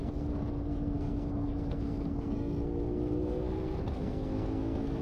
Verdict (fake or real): fake